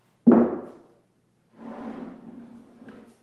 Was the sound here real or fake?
real